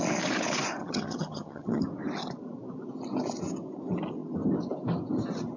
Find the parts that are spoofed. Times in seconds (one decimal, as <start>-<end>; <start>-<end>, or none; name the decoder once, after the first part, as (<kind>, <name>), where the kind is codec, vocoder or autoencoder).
0.8-1.8 (vocoder, HiFi-GAN)